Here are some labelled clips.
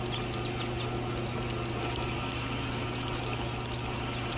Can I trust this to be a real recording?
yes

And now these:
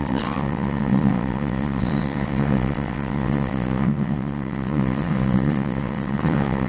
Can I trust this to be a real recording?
no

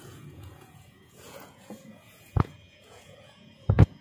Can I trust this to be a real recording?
no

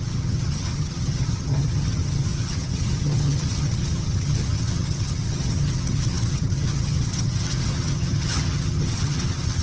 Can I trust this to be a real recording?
no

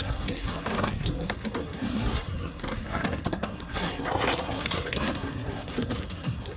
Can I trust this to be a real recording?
no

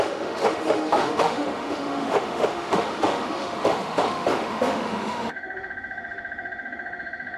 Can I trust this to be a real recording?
no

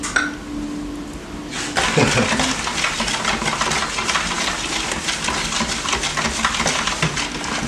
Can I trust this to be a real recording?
yes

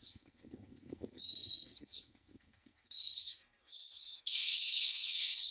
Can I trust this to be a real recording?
no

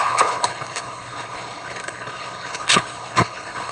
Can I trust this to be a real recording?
no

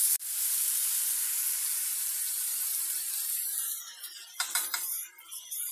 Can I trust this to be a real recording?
yes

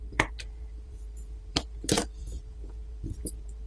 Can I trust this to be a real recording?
no